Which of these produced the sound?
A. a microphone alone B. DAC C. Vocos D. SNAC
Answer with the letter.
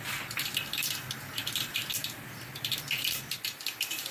A